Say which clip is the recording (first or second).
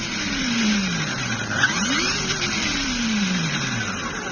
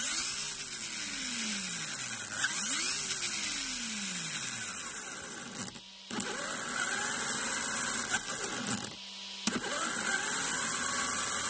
second